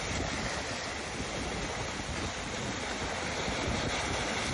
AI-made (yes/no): no